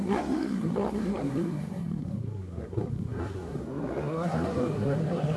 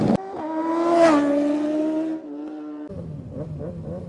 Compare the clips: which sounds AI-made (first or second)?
first